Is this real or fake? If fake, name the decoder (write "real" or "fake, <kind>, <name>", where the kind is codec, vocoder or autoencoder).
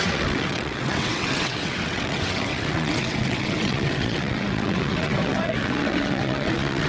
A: fake, vocoder, WaveNeXt